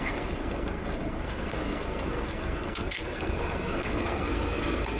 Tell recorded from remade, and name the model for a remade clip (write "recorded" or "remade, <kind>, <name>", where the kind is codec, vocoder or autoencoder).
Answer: remade, codec, SNAC